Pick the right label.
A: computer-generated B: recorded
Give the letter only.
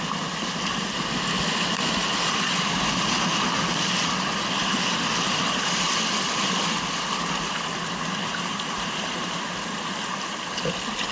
B